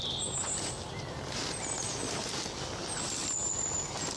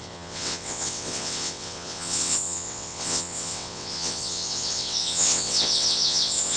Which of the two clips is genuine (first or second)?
first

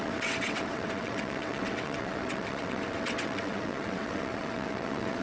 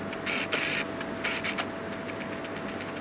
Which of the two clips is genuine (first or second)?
second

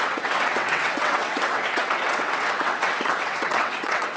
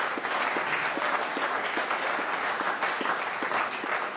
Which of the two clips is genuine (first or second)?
second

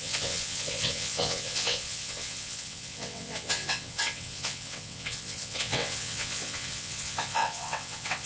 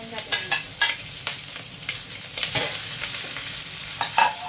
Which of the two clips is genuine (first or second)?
second